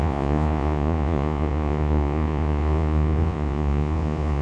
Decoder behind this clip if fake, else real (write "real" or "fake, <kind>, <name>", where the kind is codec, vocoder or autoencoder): fake, vocoder, Vocos